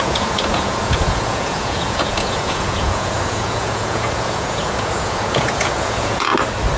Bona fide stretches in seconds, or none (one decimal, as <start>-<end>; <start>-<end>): 6.3-6.8